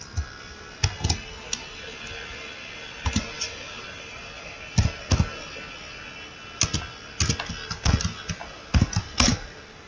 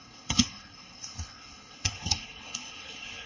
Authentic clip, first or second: first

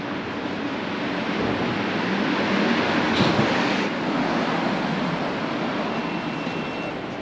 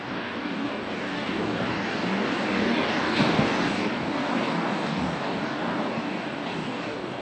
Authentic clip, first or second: first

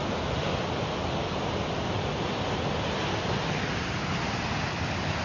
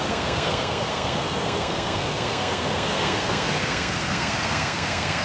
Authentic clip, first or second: first